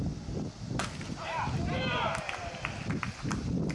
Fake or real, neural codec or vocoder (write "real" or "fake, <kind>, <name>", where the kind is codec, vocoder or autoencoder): real